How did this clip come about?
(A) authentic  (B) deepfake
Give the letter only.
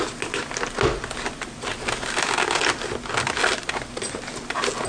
A